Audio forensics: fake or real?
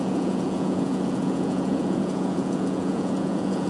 fake